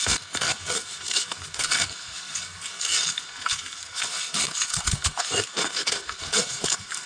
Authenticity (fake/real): fake